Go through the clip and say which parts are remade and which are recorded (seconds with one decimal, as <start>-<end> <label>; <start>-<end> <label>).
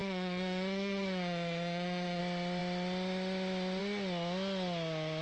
0.0-2.2 remade; 2.2-5.2 recorded